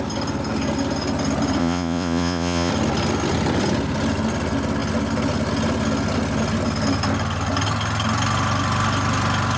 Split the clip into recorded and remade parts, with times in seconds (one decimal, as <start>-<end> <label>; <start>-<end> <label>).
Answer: 0.0-1.6 recorded; 1.6-2.7 remade; 2.7-9.6 recorded